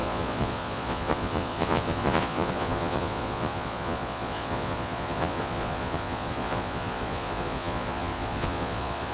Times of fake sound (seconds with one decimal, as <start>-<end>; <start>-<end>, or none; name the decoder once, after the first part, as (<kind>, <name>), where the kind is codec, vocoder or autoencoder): 0.0-9.1 (vocoder, Vocos)